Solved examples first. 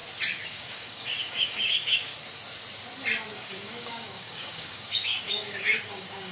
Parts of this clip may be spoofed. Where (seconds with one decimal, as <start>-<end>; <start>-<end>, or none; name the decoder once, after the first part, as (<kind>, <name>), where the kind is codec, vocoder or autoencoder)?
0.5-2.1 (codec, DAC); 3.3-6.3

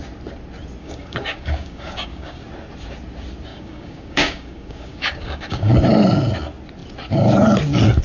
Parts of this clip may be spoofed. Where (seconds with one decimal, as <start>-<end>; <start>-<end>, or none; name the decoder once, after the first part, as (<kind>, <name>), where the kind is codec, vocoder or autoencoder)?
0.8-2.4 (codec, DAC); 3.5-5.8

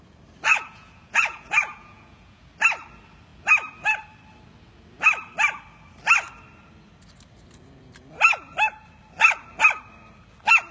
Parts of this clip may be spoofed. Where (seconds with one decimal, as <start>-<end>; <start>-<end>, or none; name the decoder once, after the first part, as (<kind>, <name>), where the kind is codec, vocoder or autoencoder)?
0.5-2.4 (vocoder, Vocos)

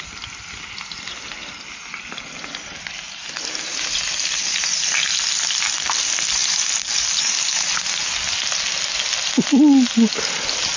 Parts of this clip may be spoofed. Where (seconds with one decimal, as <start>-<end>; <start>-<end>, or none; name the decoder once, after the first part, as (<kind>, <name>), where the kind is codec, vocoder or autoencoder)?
none

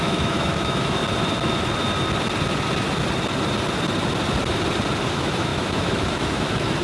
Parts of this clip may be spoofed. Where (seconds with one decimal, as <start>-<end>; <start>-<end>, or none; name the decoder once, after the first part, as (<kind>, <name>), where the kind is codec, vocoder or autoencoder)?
0.0-1.0 (autoencoder, DAC-VAE); 5.1-6.8

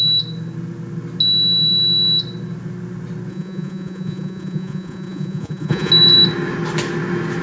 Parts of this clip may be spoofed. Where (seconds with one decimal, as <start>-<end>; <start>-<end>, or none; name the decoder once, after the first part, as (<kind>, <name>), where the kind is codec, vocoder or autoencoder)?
3.3-5.9 (vocoder, Vocos)

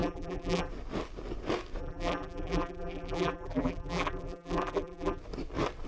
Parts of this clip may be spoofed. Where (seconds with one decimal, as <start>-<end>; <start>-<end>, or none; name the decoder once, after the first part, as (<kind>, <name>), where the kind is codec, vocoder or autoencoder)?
0.0-0.7 (vocoder, BigVGAN v2); 1.8-5.2

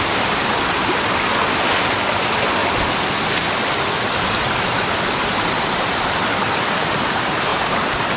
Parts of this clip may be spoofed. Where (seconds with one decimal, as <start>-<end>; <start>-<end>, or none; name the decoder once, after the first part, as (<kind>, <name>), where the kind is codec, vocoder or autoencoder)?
0.0-0.4 (vocoder, BigVGAN v2); 2.1-2.6; 5.2-8.2